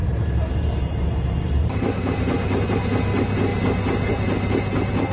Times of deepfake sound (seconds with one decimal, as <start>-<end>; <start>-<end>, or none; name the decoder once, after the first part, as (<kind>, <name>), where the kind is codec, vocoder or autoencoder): 0.0-2.6 (vocoder, BigVGAN v2)